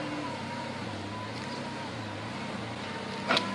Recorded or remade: recorded